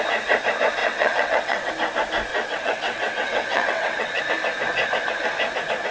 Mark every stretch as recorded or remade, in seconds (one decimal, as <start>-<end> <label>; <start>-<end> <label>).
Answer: 0.0-0.8 recorded; 0.8-1.7 remade; 1.7-2.3 recorded; 2.3-4.2 remade; 4.2-5.9 recorded